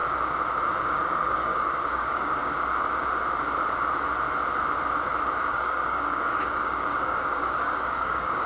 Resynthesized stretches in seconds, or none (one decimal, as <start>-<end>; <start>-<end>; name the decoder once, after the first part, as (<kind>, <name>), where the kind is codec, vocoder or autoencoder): 0.8-2.4 (codec, DAC); 5.4-8.5